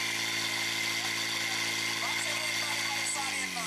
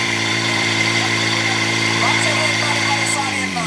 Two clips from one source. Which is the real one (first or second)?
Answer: first